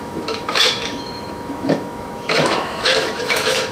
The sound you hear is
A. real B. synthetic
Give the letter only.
B